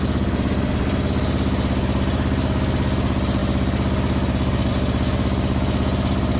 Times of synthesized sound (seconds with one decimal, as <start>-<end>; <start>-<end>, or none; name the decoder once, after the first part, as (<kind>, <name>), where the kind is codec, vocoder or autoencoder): none

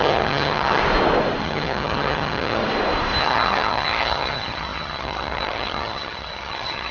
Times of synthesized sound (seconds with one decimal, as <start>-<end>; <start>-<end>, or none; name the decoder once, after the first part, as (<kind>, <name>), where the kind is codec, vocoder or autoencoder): 0.0-0.8 (vocoder, HiFi-GAN); 1.4-2.6; 3.2-6.9

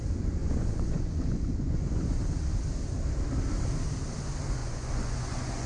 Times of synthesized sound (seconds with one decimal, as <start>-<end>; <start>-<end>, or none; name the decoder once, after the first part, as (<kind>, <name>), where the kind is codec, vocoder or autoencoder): 0.4-2.1 (vocoder, Vocos); 4.6-5.7

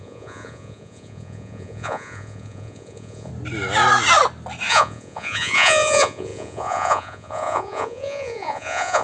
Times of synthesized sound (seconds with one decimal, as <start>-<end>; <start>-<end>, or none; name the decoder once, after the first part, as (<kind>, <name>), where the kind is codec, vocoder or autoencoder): 0.0-3.3 (vocoder, Vocos); 4.7-9.0

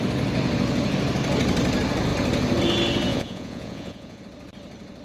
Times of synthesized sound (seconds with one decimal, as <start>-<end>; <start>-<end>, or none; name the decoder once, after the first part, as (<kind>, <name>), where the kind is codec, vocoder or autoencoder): 3.1-4.2 (vocoder, Vocos)

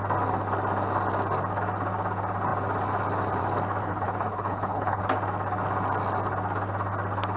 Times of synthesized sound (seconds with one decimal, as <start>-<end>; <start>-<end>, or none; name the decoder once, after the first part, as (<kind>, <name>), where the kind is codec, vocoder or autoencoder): 3.8-5.0 (codec, HILCodec)